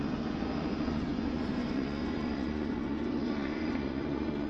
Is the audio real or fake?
fake